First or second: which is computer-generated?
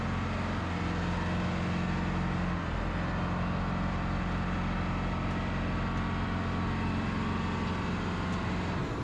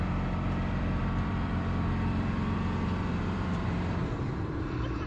second